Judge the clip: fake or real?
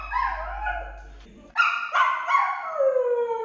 real